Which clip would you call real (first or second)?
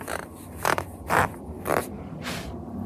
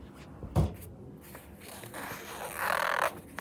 second